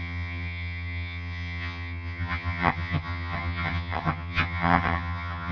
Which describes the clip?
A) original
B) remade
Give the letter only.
B